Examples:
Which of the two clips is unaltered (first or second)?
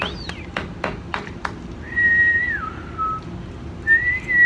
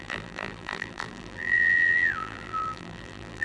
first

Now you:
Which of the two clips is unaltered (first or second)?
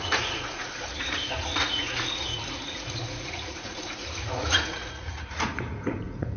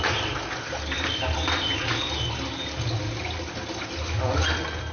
second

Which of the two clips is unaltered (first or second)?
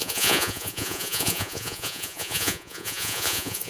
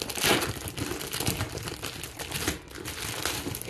second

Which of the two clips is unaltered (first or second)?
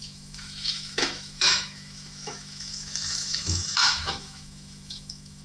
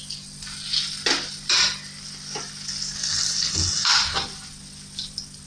second